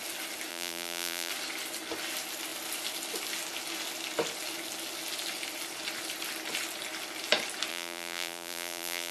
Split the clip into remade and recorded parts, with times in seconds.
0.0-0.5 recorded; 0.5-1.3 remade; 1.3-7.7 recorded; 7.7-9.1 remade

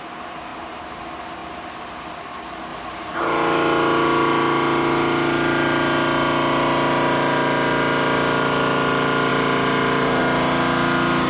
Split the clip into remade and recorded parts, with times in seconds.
0.0-0.5 recorded; 0.5-1.0 remade; 1.0-2.7 recorded; 2.7-3.2 remade; 3.2-9.3 recorded; 9.3-10.2 remade; 10.2-11.3 recorded

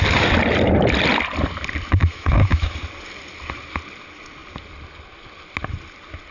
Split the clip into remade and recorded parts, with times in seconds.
0.0-2.0 recorded; 2.0-2.8 remade; 2.8-6.3 recorded

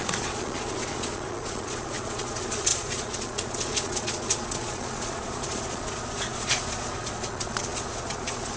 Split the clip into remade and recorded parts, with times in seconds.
0.0-8.6 remade

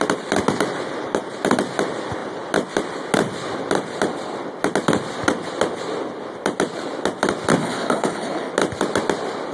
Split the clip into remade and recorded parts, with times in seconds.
0.0-7.6 recorded; 7.6-8.5 remade; 8.5-9.5 recorded

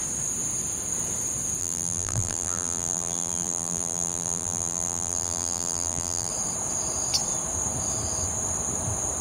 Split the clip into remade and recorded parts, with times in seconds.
0.0-1.6 recorded; 1.6-6.3 remade; 6.3-9.2 recorded

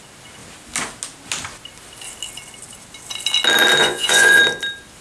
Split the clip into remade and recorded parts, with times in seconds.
0.0-3.8 recorded; 3.8-4.4 remade; 4.4-5.0 recorded

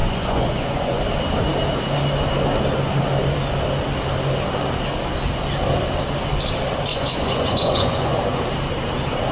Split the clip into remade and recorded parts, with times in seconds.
0.0-1.0 remade; 1.0-6.9 recorded; 6.9-8.4 remade; 8.4-9.3 recorded